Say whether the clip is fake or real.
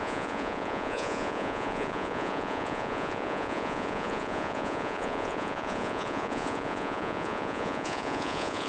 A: fake